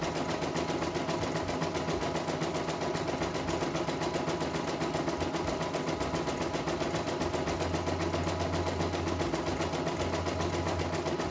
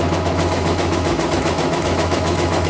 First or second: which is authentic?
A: first